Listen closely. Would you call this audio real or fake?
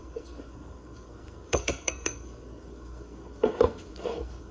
fake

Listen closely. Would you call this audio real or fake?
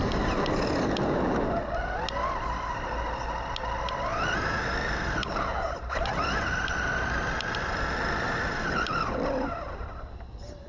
real